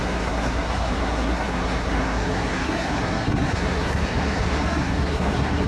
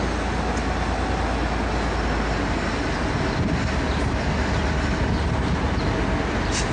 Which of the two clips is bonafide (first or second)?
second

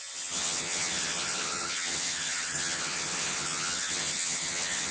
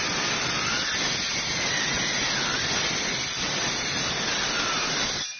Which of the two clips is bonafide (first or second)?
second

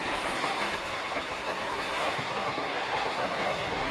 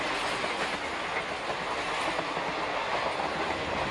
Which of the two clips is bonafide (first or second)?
second